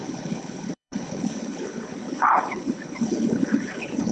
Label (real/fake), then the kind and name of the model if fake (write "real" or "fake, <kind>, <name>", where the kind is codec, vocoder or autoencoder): fake, codec, HILCodec